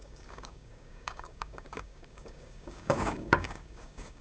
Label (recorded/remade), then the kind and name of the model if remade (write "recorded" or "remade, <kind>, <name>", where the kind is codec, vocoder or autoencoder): remade, codec, DAC